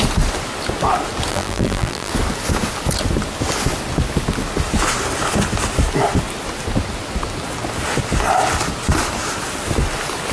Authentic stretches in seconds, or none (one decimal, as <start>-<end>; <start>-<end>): 0.0-1.3; 2.1-10.3